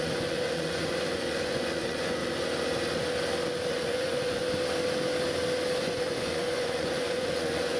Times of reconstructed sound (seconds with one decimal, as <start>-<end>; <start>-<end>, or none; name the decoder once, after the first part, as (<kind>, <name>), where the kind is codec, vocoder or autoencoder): 0.0-2.2 (vocoder, Vocos); 3.7-4.4; 5.8-7.8